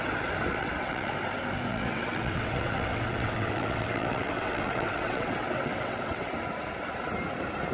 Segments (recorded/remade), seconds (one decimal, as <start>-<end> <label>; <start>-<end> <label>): 0.0-0.5 recorded; 0.5-1.1 remade; 1.1-1.7 recorded; 1.7-6.3 remade; 6.3-7.7 recorded